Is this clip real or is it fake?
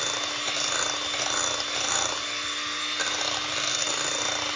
real